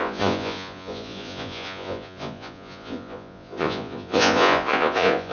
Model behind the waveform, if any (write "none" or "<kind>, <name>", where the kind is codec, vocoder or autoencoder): vocoder, Vocos